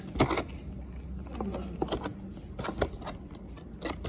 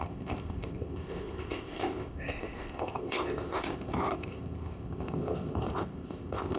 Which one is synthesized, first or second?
second